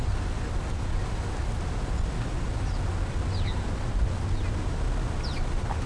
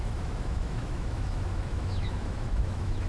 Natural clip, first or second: first